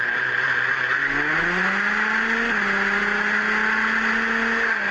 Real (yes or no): yes